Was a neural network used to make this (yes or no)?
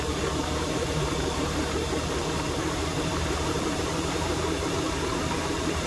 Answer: yes